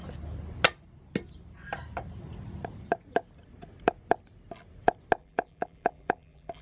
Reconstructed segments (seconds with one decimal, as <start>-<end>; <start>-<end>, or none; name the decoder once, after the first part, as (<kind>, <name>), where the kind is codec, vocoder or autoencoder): 5.2-6.6 (vocoder, BigVGAN v2)

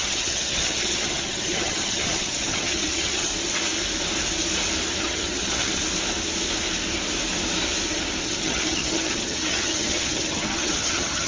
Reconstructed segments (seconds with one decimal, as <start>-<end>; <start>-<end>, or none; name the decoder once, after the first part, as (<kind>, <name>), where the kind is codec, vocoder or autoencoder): 0.0-3.3 (vocoder, HiFi-GAN); 5.0-5.8; 8.2-11.3

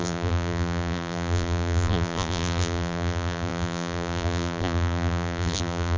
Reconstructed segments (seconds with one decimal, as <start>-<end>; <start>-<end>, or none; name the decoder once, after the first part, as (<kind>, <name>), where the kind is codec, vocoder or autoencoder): 0.0-6.0 (vocoder, BigVGAN v2)

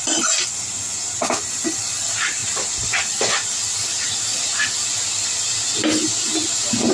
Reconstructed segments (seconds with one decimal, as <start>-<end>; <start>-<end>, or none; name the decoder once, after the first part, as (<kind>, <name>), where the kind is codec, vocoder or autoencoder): none

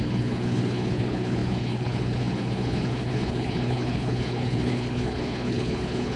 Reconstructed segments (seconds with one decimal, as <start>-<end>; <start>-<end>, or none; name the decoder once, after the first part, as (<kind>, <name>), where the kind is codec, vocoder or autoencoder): 0.0-6.2 (codec, HILCodec)